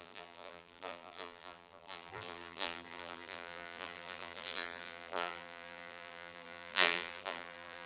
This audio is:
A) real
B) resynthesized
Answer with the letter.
B